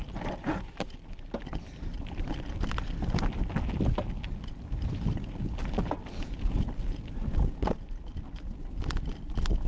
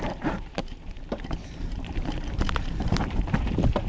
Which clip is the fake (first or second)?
second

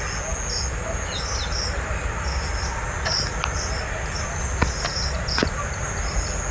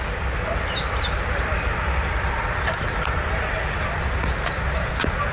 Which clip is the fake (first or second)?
second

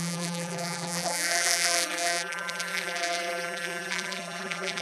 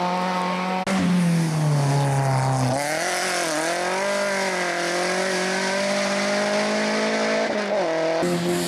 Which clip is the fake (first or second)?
first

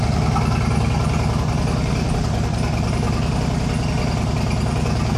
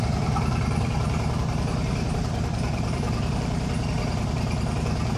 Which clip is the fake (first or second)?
second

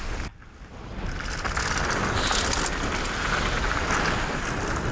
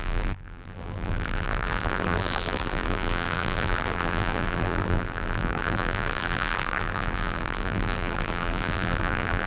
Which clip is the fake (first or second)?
second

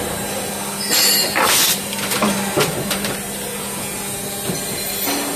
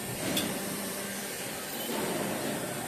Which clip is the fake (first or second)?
second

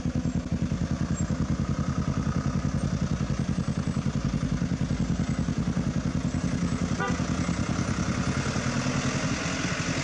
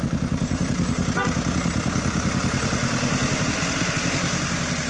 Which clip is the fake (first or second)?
second